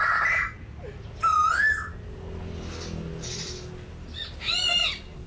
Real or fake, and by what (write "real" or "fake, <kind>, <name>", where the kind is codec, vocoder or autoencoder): real